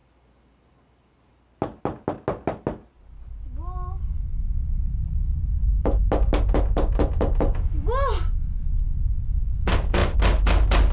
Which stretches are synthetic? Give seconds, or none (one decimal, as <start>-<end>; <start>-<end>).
none